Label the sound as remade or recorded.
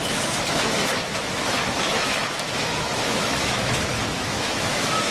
remade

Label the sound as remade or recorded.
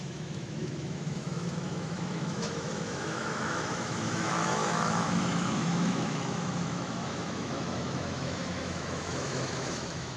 remade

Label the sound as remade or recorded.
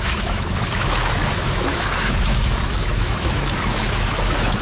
remade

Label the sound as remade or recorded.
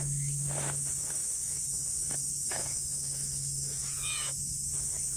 remade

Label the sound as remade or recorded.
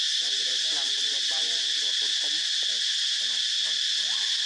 recorded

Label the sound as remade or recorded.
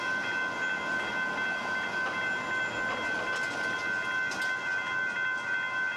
recorded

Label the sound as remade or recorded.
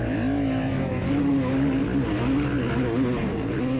recorded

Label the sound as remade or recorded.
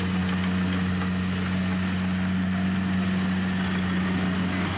recorded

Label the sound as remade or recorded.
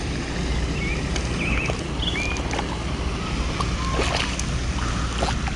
recorded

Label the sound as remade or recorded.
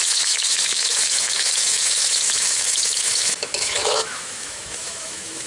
remade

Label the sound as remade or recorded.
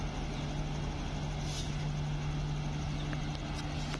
recorded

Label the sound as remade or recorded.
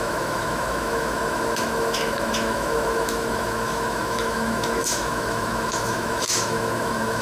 remade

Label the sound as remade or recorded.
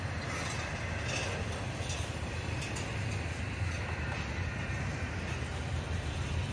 recorded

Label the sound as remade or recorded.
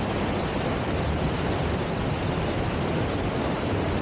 recorded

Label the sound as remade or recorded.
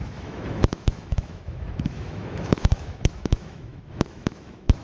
remade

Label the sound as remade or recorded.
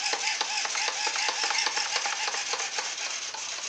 recorded